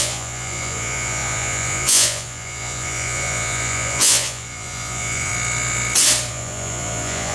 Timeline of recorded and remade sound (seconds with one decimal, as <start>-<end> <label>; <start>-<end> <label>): 0.0-5.3 remade; 5.3-6.3 recorded; 6.3-7.3 remade